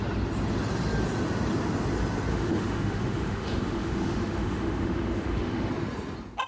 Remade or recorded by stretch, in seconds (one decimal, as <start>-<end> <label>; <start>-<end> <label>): 0.0-2.3 recorded; 2.3-5.7 remade; 5.7-6.5 recorded